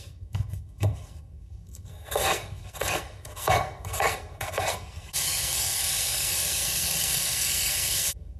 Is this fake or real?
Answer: fake